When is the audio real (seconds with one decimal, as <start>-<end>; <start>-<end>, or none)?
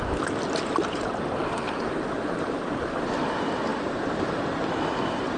0.0-1.4; 2.6-3.7; 4.4-5.4